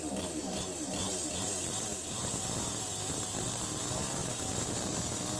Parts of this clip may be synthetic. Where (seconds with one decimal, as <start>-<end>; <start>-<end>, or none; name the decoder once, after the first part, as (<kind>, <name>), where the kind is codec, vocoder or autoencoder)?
0.4-1.1 (vocoder, BigVGAN v2); 1.9-3.8; 4.2-4.7